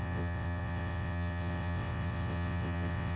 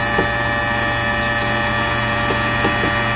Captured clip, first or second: second